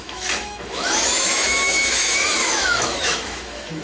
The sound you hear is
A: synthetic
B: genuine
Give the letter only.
A